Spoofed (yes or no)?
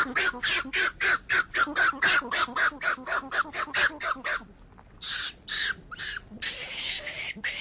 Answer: no